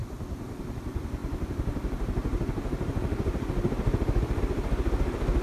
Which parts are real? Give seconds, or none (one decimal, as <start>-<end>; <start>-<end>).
0.6-1.2; 4.4-5.4